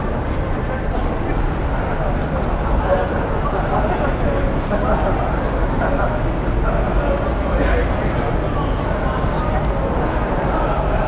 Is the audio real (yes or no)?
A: yes